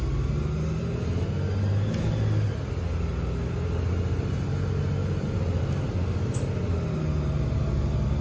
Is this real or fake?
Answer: real